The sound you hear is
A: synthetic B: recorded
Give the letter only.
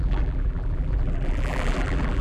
A